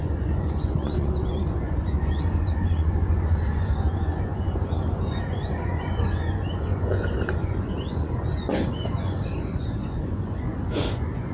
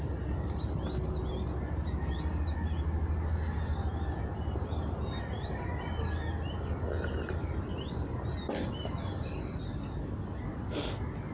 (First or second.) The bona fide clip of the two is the second